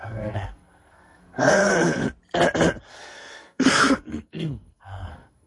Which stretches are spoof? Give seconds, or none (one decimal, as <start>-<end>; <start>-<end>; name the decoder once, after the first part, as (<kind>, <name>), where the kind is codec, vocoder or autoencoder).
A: 0.0-1.6 (codec, SNAC); 2.9-5.5